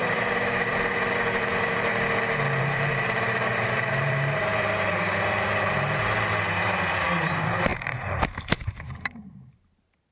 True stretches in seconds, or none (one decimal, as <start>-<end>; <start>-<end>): 1.9-2.6